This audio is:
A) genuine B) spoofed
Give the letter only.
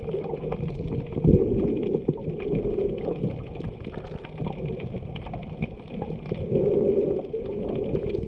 A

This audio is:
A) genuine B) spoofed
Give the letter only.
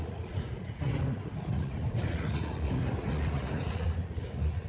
B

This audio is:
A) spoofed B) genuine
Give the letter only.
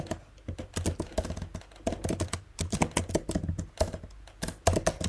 B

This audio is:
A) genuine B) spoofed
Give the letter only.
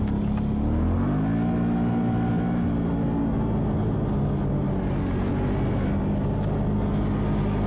A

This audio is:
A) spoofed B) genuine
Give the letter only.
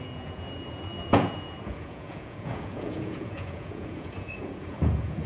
A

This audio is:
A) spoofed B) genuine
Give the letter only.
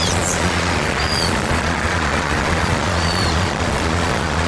A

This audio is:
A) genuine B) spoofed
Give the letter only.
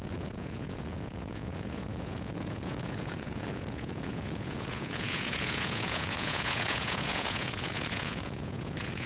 B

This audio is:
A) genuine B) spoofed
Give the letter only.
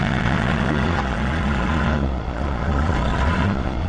B